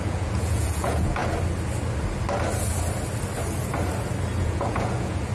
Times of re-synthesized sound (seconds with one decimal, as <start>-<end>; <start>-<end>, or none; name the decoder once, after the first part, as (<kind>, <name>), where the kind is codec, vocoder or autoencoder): 0.0-1.2 (vocoder, Vocos); 4.4-5.3